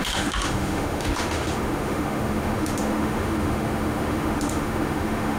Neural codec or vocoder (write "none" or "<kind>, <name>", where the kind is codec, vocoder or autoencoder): autoencoder, DAC-VAE